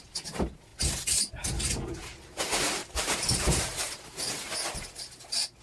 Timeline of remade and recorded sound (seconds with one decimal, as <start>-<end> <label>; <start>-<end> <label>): 0.0-2.8 recorded; 2.8-3.9 remade; 3.9-5.6 recorded